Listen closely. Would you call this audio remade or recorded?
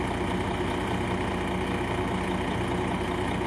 recorded